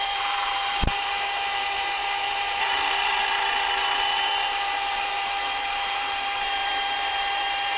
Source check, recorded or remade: remade